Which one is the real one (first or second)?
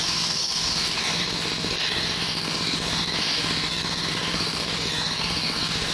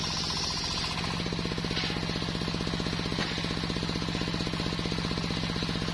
second